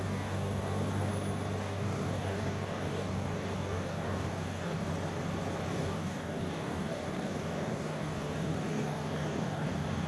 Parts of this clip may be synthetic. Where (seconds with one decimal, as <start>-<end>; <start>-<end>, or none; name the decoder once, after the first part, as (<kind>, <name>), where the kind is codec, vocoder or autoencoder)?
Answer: 0.0-1.1 (codec, DAC); 1.6-4.9; 5.7-10.1